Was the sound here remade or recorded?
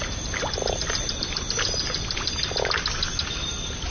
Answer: recorded